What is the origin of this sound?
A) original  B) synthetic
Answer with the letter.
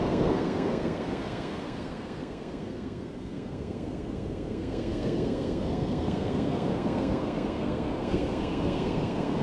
B